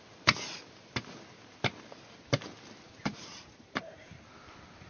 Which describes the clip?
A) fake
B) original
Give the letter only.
B